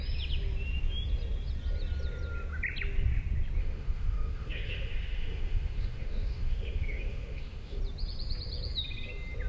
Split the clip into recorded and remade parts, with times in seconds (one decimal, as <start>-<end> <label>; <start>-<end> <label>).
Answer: 0.0-3.6 recorded; 3.6-7.8 remade; 7.8-9.5 recorded